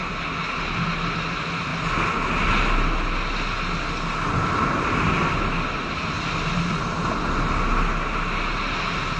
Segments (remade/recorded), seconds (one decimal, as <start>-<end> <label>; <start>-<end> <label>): 0.0-9.2 recorded